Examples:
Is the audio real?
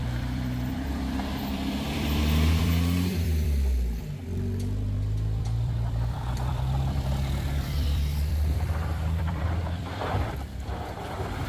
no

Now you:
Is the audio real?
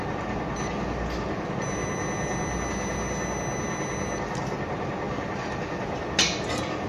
yes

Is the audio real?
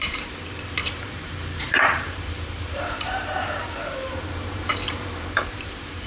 no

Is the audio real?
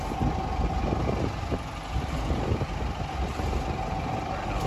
yes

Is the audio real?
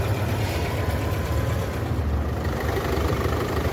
no